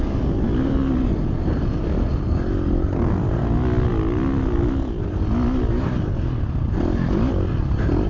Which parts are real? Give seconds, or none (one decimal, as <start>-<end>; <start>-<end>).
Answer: 0.0-8.1